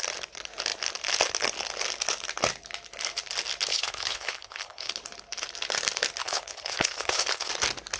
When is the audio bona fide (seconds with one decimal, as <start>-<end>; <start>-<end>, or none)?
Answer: 0.0-3.7; 4.9-6.2; 7.5-8.0